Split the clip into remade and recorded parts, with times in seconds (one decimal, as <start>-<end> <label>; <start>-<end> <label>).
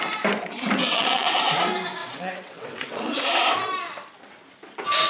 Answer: 0.0-0.8 recorded; 0.8-1.5 remade; 1.5-2.0 recorded; 2.0-3.2 remade; 3.2-5.1 recorded